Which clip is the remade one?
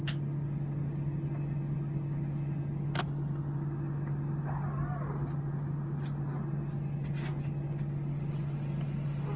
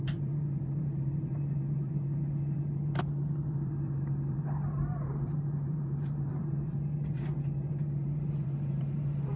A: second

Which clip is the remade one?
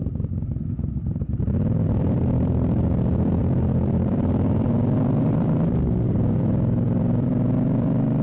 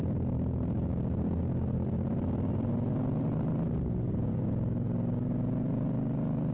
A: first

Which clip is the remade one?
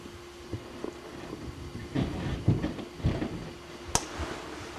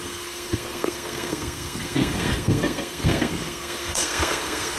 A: second